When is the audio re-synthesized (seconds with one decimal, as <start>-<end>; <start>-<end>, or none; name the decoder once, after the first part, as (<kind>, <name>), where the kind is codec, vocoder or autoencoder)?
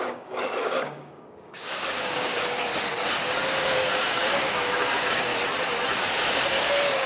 0.0-2.7 (codec, DAC); 3.6-5.3; 6.2-7.1